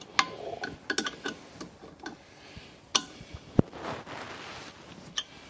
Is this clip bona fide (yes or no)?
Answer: yes